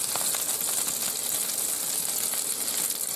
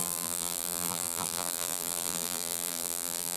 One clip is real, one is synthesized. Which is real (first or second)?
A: first